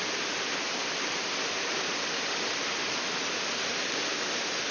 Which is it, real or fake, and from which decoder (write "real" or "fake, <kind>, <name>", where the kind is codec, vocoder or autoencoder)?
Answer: real